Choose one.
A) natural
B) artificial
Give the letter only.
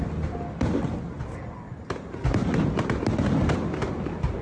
A